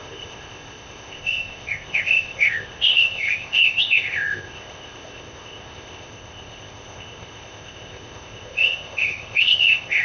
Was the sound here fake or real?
fake